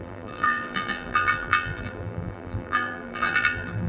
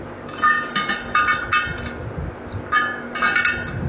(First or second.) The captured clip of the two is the second